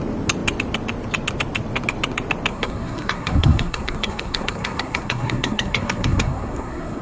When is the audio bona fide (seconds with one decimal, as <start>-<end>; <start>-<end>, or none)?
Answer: 0.0-2.5